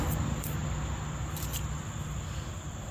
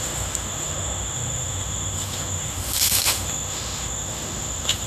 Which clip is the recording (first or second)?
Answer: first